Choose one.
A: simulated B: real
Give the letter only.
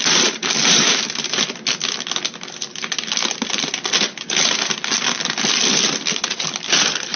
B